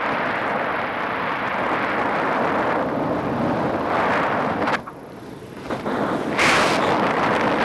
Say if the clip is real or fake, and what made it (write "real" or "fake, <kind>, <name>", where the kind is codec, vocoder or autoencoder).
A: real